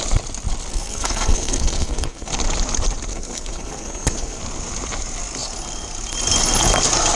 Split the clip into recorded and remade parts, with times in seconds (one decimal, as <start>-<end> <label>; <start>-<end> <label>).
0.0-0.7 recorded; 0.7-2.3 remade; 2.3-3.1 recorded; 3.1-4.4 remade; 4.4-7.2 recorded